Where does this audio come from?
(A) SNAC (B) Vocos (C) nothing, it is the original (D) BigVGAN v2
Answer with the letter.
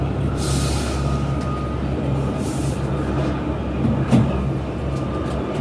C